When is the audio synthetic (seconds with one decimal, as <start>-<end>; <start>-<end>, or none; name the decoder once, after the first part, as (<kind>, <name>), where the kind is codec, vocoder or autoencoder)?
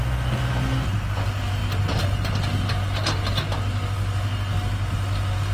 none